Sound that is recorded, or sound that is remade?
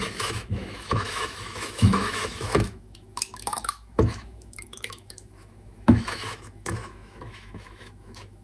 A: remade